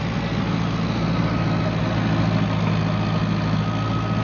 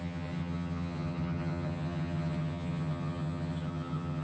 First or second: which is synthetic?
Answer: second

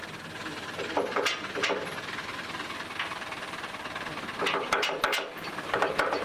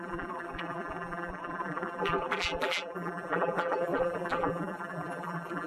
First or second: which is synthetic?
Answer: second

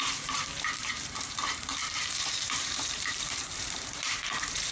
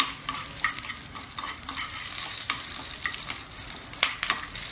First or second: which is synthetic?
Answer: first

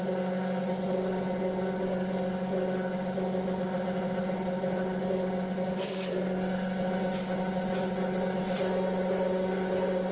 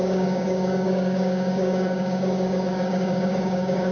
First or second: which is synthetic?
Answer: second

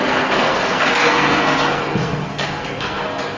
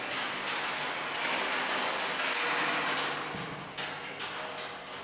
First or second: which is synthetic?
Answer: first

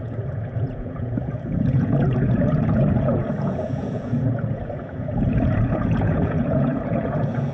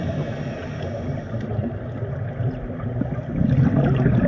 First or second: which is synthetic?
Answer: first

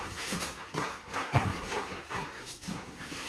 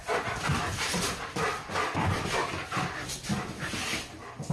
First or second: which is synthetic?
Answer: first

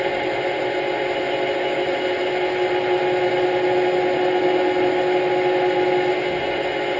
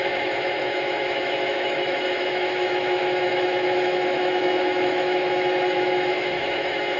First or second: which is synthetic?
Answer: second